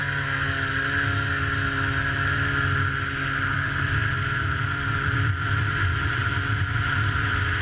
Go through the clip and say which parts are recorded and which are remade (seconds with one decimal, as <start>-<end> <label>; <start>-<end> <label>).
0.0-3.5 recorded; 3.5-6.2 remade; 6.2-6.8 recorded; 6.8-7.6 remade